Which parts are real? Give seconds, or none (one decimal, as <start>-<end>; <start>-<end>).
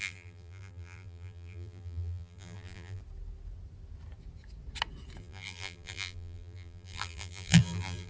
3.0-5.2